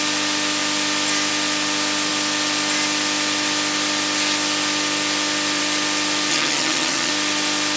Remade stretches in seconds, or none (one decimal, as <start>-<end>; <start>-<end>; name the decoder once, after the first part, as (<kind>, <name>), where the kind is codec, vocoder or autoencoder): 6.3-7.1 (vocoder, HiFi-GAN)